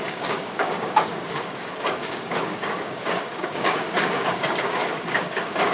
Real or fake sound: fake